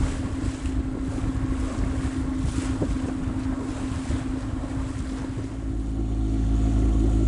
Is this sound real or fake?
real